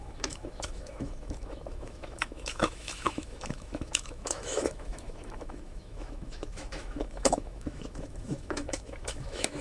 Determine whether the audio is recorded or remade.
remade